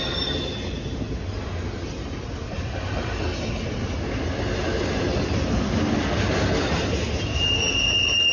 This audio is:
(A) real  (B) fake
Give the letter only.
A